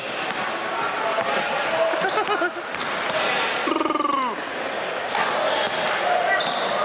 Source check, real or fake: real